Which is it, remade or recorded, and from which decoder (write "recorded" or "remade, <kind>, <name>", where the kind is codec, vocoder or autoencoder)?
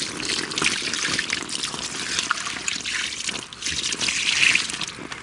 recorded